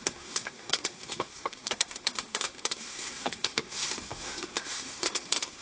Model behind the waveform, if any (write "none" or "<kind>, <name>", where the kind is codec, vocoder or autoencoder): codec, SNAC